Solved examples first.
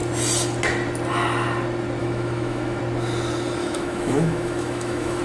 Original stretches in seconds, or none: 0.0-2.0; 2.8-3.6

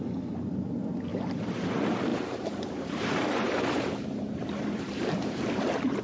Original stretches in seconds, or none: 0.0-1.1; 1.7-2.1

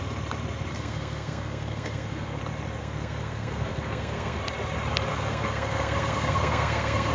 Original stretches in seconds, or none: 0.0-0.7; 2.4-2.8; 4.4-5.1

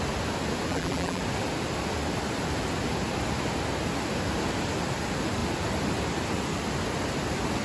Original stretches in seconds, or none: 0.0-0.7; 1.2-7.6

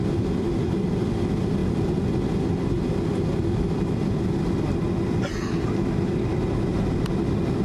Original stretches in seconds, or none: 0.0-7.6

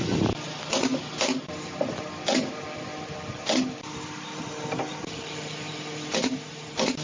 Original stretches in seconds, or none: 0.0-7.0

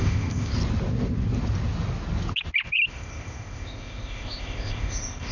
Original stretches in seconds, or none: 0.5-2.9